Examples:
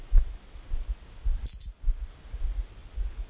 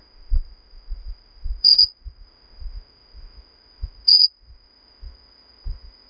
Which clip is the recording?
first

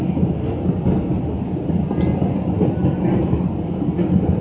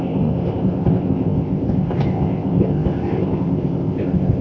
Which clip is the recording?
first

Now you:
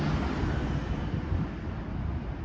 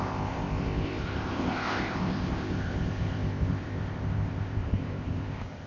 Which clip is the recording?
first